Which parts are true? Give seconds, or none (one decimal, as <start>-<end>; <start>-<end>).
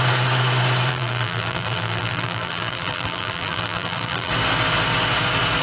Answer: 0.0-0.9; 4.3-5.6